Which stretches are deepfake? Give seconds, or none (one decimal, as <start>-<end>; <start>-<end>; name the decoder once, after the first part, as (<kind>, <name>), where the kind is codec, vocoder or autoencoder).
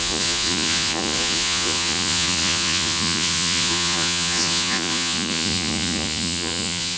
0.0-7.0 (vocoder, Vocos)